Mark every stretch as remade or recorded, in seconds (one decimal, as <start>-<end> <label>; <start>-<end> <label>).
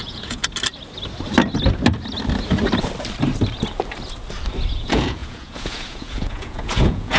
0.0-0.4 remade; 0.4-4.7 recorded; 4.7-7.2 remade